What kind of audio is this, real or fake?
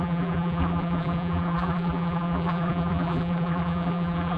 fake